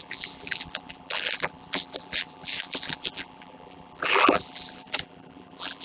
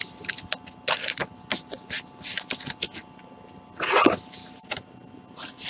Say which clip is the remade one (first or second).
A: first